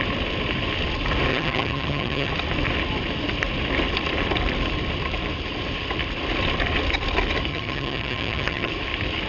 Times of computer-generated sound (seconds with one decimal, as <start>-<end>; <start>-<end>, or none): 1.3-2.3; 7.5-8.7